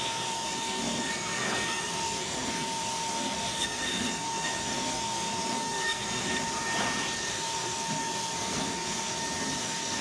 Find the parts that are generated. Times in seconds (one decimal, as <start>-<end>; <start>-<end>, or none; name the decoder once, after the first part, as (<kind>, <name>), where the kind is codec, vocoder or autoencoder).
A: 0.0-6.2 (codec, SNAC); 7.3-9.1; 9.6-10.0